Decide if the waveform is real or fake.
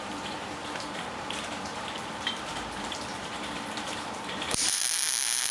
fake